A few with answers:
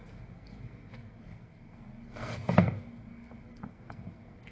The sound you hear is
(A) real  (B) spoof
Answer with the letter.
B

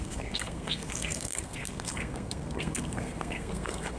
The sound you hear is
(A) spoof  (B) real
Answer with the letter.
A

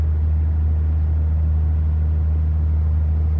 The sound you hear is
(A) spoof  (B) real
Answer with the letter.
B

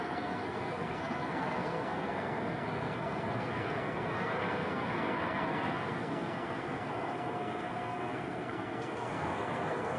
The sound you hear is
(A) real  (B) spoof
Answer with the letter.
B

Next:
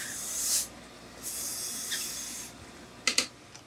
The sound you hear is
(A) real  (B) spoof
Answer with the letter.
A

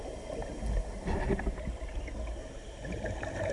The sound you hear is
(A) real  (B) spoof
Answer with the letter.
A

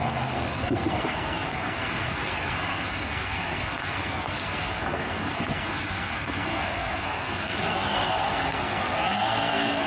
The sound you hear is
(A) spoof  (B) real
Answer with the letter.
A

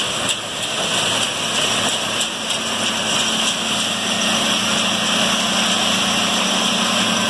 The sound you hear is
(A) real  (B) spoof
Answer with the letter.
A